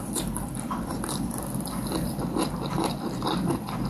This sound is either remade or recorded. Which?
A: remade